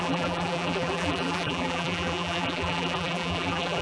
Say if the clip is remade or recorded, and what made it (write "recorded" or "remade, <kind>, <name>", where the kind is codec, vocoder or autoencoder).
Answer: remade, vocoder, BigVGAN v2